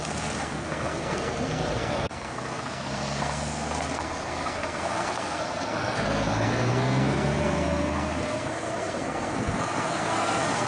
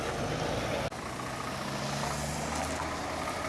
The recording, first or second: second